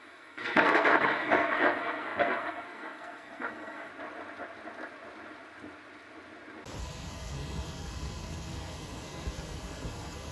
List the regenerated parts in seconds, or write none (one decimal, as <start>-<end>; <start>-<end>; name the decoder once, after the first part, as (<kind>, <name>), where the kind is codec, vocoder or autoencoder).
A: 0.0-3.9 (codec, SNAC); 6.8-10.3